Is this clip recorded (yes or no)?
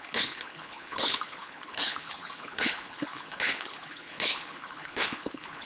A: no